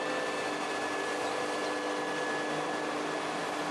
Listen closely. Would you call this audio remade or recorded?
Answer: recorded